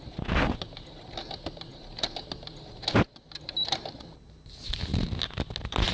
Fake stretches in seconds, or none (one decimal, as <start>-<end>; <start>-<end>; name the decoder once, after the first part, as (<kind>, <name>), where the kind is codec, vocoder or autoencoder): none